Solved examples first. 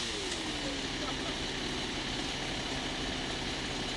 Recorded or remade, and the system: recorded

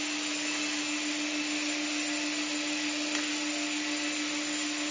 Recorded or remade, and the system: recorded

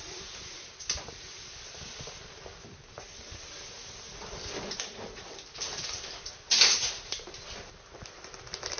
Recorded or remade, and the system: recorded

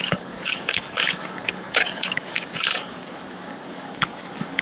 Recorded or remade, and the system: remade, codec, DAC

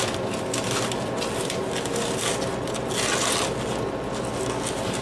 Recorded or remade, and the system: recorded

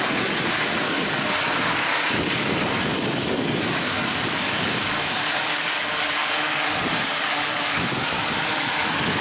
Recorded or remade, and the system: remade, codec, DAC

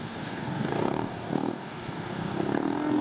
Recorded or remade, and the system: remade, codec, DAC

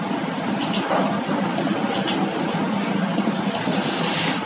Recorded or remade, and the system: recorded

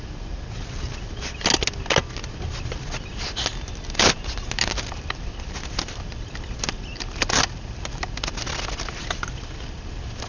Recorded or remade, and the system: recorded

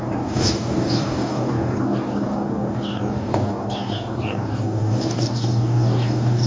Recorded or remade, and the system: remade, codec, DAC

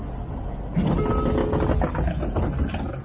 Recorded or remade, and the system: recorded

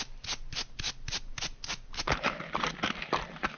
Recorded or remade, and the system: recorded